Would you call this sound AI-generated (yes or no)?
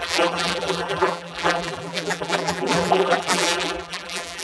yes